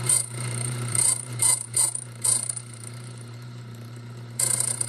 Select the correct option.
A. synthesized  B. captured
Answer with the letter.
A